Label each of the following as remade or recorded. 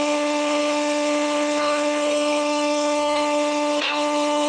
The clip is remade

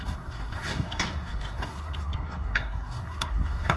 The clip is remade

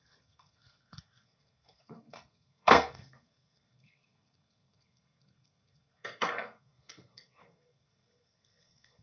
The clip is remade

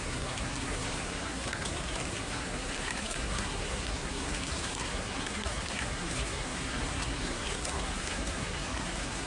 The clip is remade